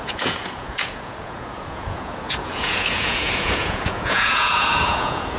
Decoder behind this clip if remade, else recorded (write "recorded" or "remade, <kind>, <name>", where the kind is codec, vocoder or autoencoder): remade, vocoder, Vocos